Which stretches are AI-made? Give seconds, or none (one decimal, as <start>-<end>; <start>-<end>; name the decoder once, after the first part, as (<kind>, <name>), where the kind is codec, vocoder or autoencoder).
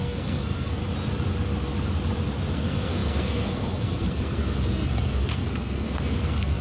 0.0-0.8 (codec, SNAC); 2.5-6.6